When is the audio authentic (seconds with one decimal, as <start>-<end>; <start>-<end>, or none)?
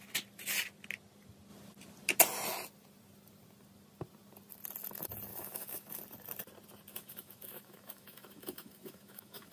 0.0-5.3; 6.0-6.9